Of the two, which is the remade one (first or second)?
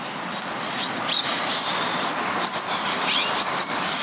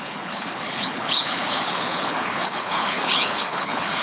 second